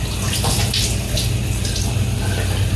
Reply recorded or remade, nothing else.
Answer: recorded